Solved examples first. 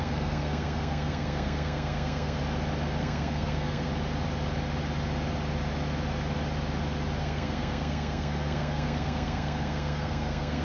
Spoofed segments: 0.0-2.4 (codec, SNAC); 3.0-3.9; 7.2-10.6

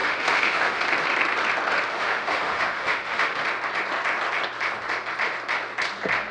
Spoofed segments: 0.0-0.8 (autoencoder, DAC-VAE); 1.9-3.4

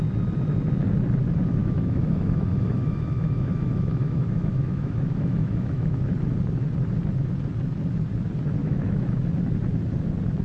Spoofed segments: 1.6-6.0 (autoencoder, DAC-VAE); 8.6-9.2

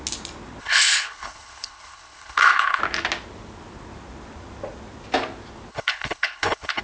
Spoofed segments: 0.6-2.8 (codec, HILCodec); 5.7-6.8

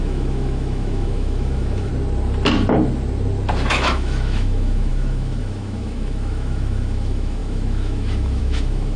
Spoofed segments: 0.0-1.9 (autoencoder, DAC-VAE); 3.7-9.0

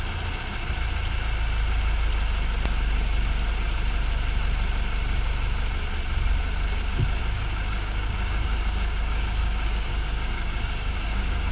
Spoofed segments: 7.2-11.5 (codec, DAC)

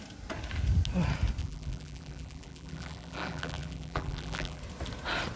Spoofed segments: 1.4-4.6 (vocoder, BigVGAN v2)